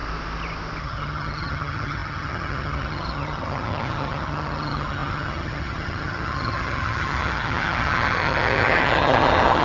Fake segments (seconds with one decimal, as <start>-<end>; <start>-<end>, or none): 0.8-9.6